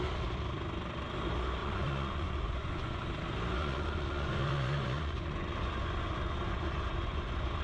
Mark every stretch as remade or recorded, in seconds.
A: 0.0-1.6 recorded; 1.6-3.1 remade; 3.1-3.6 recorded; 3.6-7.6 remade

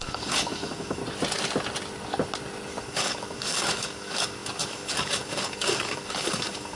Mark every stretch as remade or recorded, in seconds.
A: 0.0-1.0 remade; 1.0-2.8 recorded; 2.8-6.8 remade

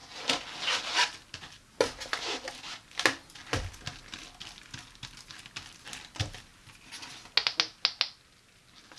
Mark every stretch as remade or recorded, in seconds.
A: 0.0-9.0 recorded

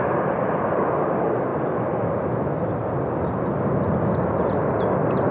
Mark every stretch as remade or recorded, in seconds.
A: 0.0-5.3 recorded

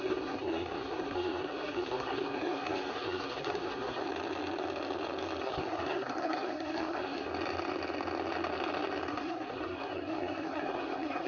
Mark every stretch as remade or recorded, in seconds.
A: 0.0-4.0 remade; 4.0-5.4 recorded; 5.4-7.3 remade; 7.3-9.1 recorded; 9.1-11.3 remade

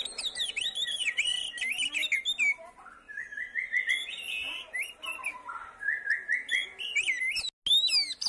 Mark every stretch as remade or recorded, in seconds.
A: 0.0-8.3 recorded

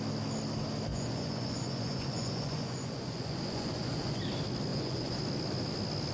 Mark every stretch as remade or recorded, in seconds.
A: 0.0-0.9 recorded; 0.9-4.2 remade; 4.2-4.7 recorded; 4.7-5.2 remade; 5.2-6.1 recorded

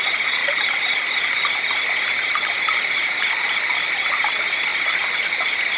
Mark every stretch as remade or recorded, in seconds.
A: 0.0-5.8 recorded